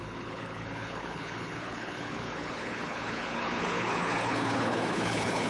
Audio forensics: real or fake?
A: fake